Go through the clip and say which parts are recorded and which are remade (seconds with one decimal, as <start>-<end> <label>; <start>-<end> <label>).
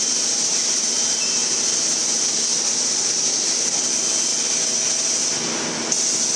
0.0-6.4 recorded